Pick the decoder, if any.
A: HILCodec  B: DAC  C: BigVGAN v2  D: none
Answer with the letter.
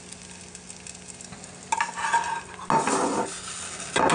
D